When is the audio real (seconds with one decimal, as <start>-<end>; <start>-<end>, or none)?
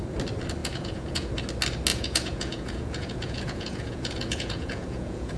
0.0-0.6; 1.3-1.9